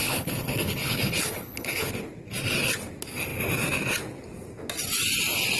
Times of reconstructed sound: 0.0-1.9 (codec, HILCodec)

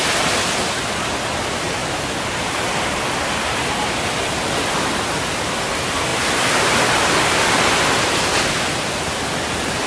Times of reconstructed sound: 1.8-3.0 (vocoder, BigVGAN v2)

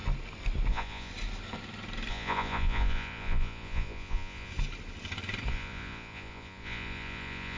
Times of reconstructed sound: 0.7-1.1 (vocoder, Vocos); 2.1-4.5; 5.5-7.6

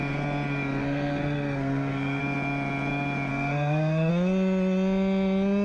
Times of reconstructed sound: 0.8-2.2 (codec, SNAC); 3.3-4.1